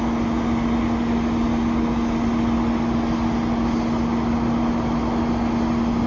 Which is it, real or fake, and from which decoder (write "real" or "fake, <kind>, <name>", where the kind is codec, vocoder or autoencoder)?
real